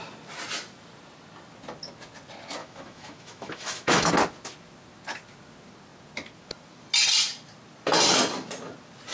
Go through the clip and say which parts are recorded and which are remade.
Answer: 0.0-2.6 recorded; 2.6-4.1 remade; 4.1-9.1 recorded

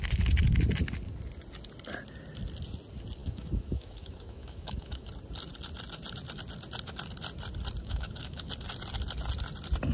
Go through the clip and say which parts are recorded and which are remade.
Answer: 0.0-3.2 recorded; 3.2-5.1 remade; 5.1-7.8 recorded; 7.8-8.5 remade; 8.5-9.9 recorded

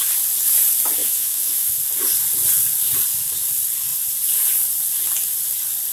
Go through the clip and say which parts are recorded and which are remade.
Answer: 0.0-1.0 recorded; 1.0-1.7 remade; 1.7-5.9 recorded

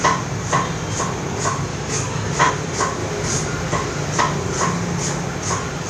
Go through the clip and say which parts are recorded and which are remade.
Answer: 0.0-1.7 recorded; 1.7-2.5 remade; 2.5-5.9 recorded

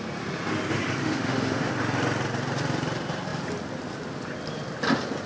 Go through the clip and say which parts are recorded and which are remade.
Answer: 0.0-1.0 recorded; 1.0-1.7 remade; 1.7-5.3 recorded

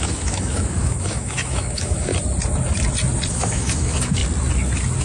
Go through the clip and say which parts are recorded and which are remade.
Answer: 0.0-2.1 remade; 2.1-3.3 recorded; 3.3-4.2 remade; 4.2-5.0 recorded

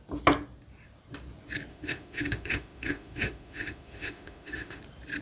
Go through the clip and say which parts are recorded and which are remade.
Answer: 0.0-1.7 recorded; 1.7-4.8 remade; 4.8-5.2 recorded

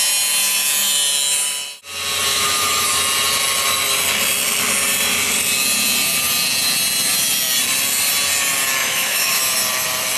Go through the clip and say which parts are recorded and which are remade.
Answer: 0.0-2.3 recorded; 2.3-3.0 remade; 3.0-8.8 recorded; 8.8-9.4 remade; 9.4-10.2 recorded